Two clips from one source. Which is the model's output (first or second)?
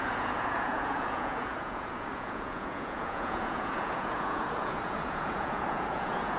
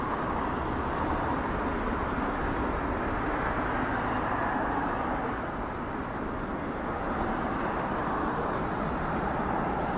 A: first